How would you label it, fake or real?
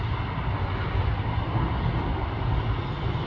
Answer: real